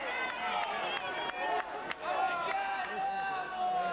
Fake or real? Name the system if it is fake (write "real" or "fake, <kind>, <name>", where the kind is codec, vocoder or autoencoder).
real